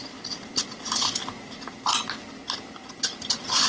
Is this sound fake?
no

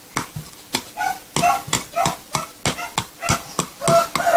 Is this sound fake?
no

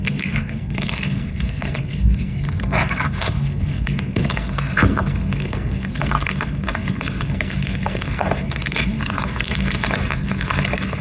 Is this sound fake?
yes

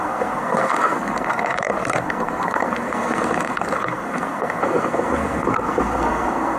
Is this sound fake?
yes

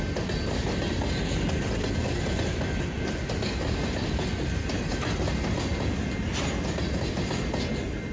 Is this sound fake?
no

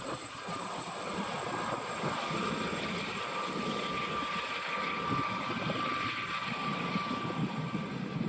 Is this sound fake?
no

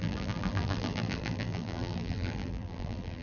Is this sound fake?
yes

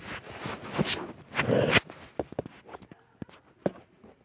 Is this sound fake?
no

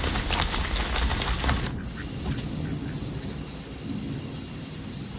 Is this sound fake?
no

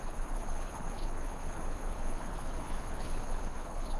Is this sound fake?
yes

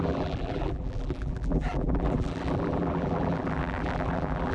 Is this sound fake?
yes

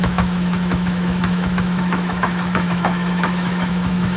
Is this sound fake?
yes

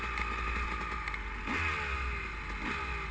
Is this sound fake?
no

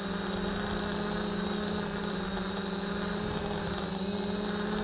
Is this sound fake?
no